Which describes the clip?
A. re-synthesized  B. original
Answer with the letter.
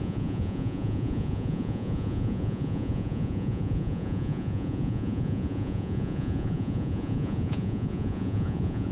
A